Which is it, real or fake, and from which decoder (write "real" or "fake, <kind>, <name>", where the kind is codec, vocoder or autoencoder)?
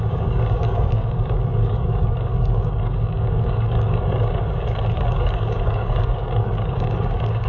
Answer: fake, codec, DAC